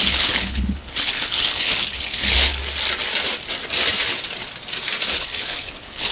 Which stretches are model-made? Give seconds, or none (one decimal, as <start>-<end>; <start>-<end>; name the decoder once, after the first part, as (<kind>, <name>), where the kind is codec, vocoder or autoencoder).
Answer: 0.0-2.6 (codec, HILCodec); 5.1-6.1